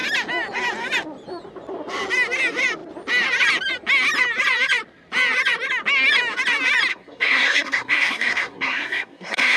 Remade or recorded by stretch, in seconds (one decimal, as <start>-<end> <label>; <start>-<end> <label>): 0.0-6.9 recorded; 6.9-9.6 remade